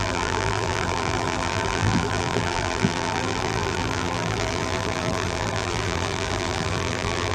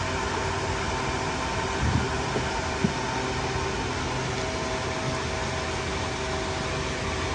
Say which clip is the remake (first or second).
first